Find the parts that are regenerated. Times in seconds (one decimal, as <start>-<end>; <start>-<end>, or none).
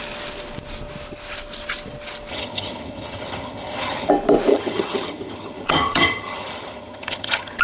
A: 2.3-4.1; 4.5-7.6